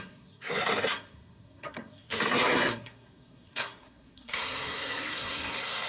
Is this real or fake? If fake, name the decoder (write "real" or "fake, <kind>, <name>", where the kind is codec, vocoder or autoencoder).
fake, codec, SNAC